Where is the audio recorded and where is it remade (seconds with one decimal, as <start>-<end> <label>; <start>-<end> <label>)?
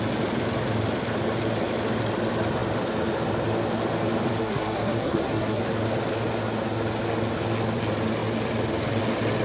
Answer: 0.0-4.4 recorded; 4.4-5.6 remade; 5.6-9.4 recorded